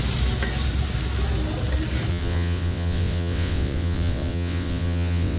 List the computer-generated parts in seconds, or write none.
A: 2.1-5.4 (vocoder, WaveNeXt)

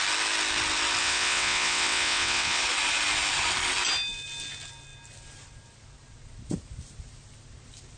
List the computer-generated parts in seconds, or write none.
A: 1.0-2.6 (vocoder, WaveNeXt)

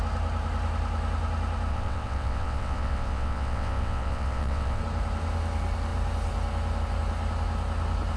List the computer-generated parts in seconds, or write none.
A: 1.7-4.8 (vocoder, WaveNeXt)

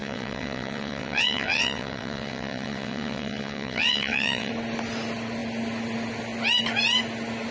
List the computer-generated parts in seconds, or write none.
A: 0.0-4.5 (vocoder, WaveNeXt)

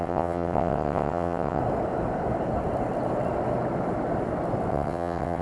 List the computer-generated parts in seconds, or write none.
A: 0.0-1.6 (vocoder, WaveNeXt); 4.7-5.4

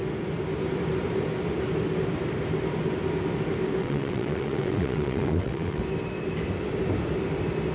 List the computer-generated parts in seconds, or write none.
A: 3.8-5.8 (vocoder, WaveNeXt)